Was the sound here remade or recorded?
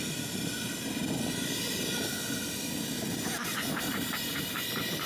recorded